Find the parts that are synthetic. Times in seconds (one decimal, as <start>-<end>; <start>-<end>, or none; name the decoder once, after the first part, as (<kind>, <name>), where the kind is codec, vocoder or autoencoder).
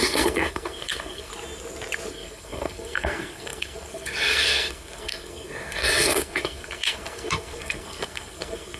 0.0-1.3 (codec, SNAC); 2.1-8.8